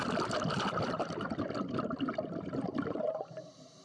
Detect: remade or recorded recorded